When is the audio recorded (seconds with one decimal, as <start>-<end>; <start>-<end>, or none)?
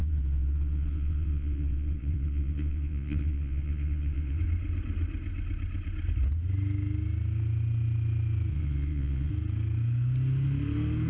4.4-8.5; 9.3-11.1